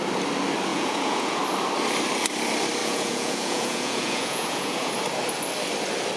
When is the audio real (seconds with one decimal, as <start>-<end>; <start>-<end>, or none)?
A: 0.0-0.7; 1.4-2.8; 4.9-6.2